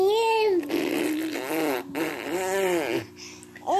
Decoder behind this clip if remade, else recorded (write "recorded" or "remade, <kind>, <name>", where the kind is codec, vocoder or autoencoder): recorded